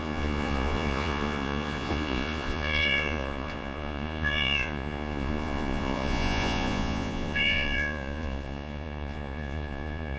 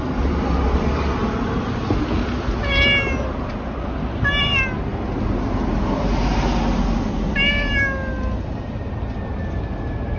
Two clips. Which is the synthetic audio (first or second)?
first